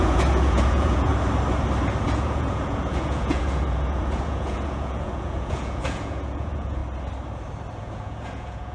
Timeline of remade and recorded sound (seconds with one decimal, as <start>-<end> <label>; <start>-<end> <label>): 0.0-1.1 remade; 1.1-2.0 recorded; 2.0-6.8 remade; 6.8-7.8 recorded; 7.8-8.7 remade